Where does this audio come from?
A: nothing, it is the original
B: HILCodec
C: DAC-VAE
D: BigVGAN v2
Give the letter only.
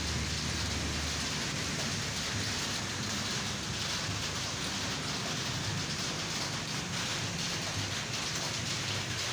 A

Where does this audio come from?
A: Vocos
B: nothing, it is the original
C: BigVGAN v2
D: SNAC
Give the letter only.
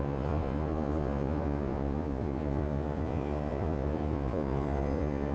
A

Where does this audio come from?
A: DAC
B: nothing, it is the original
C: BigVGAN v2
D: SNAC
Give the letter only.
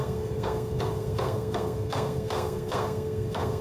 D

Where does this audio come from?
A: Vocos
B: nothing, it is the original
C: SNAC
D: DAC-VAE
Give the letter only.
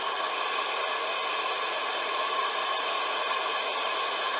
A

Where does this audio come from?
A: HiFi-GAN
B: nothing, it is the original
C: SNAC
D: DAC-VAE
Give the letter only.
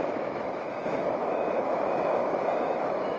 D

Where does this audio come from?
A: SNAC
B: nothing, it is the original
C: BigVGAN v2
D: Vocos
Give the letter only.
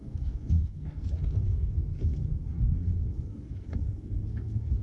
A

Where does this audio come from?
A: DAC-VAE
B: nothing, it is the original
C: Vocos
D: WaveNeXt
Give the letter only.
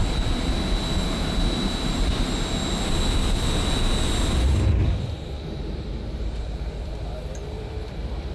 B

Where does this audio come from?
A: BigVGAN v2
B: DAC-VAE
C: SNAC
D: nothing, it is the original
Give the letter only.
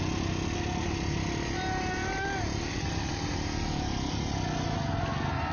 D